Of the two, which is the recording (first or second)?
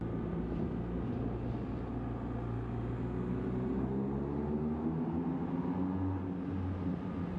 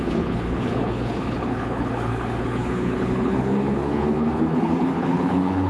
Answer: first